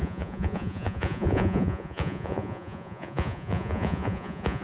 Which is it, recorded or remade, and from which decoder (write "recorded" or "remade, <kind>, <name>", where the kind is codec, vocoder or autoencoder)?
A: remade, vocoder, Vocos